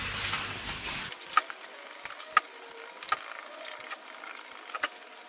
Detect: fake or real real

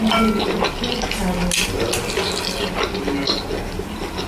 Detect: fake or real real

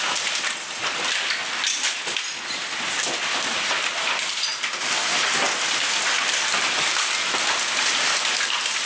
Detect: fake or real real